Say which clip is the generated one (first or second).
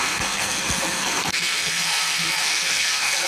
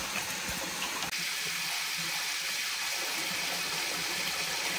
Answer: first